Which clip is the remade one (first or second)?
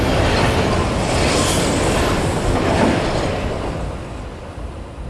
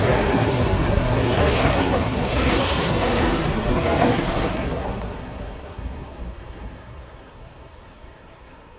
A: second